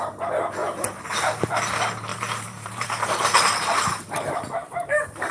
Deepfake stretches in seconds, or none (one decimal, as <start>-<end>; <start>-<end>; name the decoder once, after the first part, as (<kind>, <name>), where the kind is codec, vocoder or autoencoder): 2.1-5.3 (vocoder, BigVGAN v2)